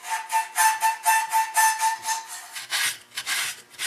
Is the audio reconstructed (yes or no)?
no